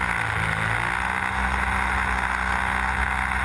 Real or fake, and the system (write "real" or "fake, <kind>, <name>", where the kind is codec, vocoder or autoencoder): real